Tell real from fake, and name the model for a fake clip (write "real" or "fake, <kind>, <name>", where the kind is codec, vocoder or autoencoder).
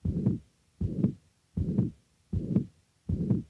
real